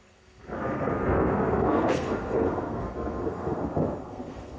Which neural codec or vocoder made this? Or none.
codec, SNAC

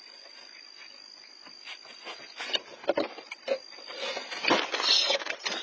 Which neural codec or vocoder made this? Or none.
none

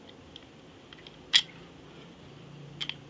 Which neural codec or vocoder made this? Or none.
none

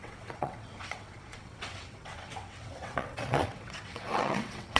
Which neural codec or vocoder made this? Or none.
vocoder, WaveNeXt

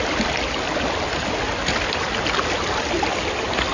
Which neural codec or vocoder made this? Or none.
none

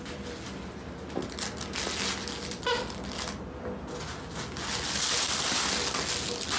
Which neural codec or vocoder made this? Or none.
none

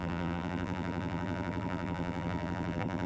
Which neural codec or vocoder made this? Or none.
vocoder, BigVGAN v2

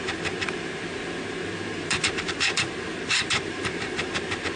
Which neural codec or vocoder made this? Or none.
vocoder, BigVGAN v2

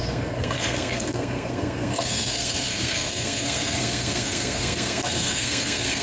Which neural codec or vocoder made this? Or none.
codec, SNAC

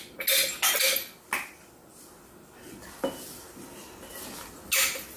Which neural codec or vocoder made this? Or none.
none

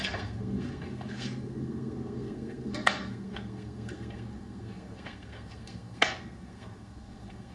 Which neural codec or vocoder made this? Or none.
codec, SNAC